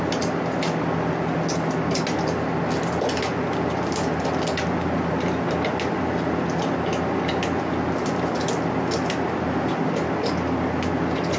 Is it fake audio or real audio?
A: real